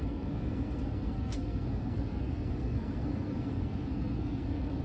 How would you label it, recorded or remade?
remade